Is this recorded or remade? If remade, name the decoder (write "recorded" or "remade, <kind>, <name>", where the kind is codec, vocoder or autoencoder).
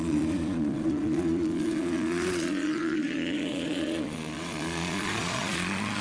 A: remade, vocoder, Vocos